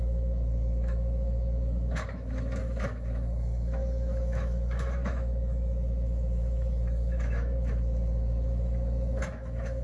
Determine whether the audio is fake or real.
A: fake